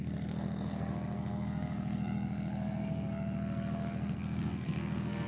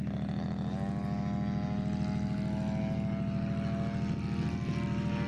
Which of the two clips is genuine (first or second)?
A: second